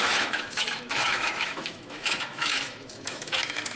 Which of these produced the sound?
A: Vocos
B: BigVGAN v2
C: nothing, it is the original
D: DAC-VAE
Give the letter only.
D